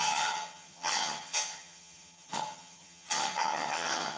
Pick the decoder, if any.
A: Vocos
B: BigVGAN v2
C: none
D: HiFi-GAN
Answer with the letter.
D